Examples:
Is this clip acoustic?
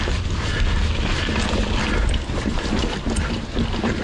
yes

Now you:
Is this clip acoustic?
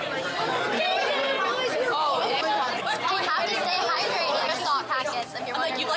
no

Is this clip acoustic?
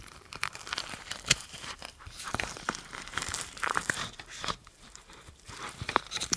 no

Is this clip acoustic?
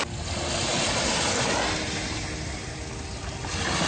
yes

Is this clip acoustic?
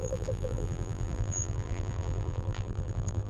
no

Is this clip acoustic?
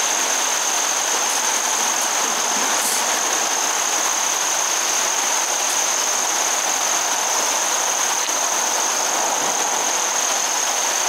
yes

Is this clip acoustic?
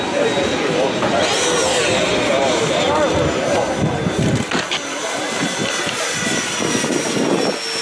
yes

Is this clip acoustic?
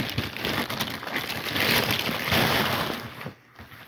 yes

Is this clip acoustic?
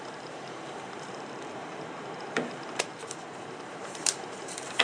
no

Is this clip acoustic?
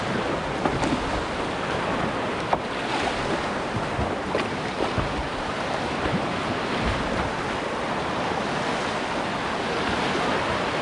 yes